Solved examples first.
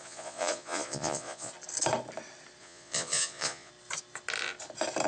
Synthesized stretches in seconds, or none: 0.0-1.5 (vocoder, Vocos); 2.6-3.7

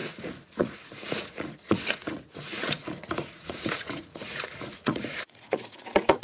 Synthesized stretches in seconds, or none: 0.0-6.2 (vocoder, Vocos)